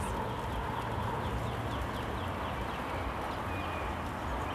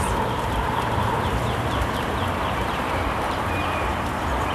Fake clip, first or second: second